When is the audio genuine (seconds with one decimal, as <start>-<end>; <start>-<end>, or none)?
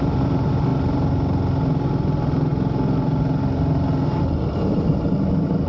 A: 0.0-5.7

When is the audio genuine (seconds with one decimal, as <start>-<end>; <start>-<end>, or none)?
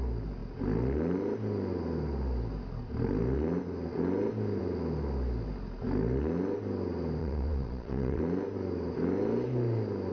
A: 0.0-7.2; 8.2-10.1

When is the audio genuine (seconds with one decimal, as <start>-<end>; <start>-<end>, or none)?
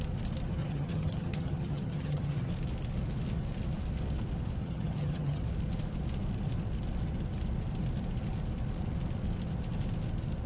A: 0.0-0.6; 2.5-4.6; 5.4-10.5